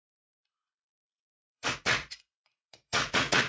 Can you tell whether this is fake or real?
fake